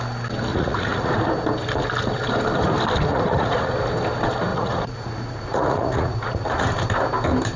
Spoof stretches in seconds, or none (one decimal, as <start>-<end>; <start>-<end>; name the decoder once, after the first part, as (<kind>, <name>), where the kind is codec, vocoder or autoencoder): 0.5-1.1 (vocoder, Vocos); 3.1-3.7; 4.5-6.7

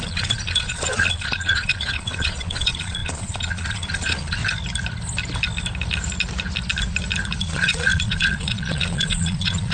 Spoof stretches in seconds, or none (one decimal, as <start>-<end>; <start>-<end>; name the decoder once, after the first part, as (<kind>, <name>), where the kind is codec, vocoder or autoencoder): 0.0-4.4 (vocoder, Vocos); 7.4-9.7

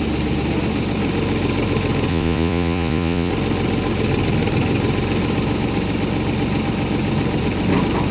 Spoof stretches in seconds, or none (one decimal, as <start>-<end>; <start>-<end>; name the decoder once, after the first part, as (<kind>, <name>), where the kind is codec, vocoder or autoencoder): 2.1-3.3 (vocoder, Vocos)

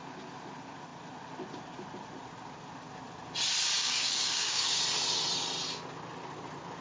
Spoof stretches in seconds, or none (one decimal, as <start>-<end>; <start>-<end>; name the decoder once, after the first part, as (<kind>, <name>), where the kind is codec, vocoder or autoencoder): 3.8-4.8 (codec, DAC)

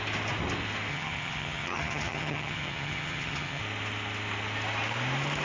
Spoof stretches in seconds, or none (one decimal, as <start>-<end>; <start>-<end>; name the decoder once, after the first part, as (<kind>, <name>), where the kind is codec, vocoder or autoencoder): 0.9-3.6 (vocoder, HiFi-GAN)

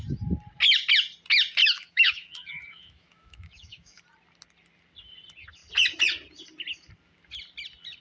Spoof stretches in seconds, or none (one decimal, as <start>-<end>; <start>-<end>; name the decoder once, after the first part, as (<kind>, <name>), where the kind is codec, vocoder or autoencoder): 1.6-4.0 (autoencoder, DAC-VAE)

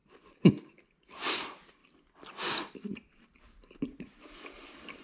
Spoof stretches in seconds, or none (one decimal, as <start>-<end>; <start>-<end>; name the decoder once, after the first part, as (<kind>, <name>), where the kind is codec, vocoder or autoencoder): none